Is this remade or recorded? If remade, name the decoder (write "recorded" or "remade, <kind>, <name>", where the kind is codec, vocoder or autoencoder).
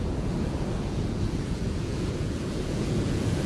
remade, vocoder, Vocos